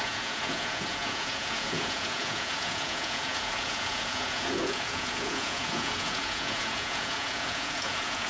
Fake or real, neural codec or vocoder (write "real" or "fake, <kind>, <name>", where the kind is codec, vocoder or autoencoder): fake, vocoder, Vocos